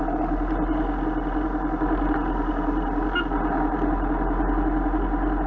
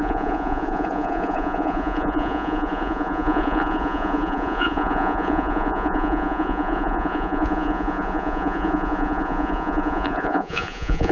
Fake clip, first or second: second